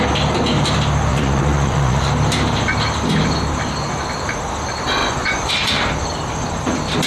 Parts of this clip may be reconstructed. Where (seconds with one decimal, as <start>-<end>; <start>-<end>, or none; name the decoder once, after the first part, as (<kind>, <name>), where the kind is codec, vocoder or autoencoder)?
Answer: 1.1-2.1 (vocoder, Vocos); 5.0-5.5

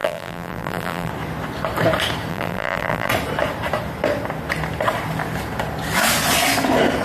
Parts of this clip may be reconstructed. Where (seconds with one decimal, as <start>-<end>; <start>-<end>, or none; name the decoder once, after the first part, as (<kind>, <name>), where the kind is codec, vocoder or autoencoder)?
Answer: 0.0-1.1 (vocoder, BigVGAN v2); 2.3-3.1

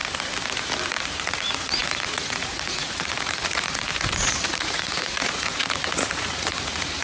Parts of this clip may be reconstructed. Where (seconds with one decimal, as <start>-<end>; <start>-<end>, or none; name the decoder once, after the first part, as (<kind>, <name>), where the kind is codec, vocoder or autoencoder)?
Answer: 0.9-7.0 (vocoder, Vocos)

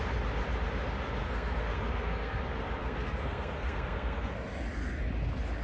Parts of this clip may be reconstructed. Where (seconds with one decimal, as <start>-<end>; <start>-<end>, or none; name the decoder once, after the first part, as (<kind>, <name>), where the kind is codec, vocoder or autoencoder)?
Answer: 1.2-2.4 (codec, SNAC); 2.8-4.3

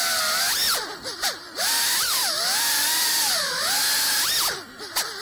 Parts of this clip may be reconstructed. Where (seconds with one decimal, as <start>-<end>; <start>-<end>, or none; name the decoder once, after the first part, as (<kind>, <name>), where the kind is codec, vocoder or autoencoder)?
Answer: 0.6-3.7 (vocoder, BigVGAN v2)